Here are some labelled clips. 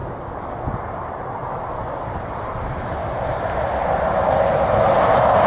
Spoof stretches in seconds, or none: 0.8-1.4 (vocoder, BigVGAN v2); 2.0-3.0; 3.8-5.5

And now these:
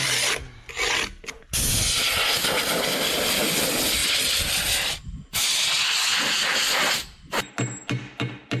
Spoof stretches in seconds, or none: none

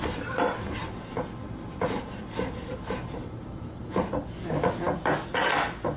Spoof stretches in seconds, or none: 0.8-3.7 (vocoder, BigVGAN v2)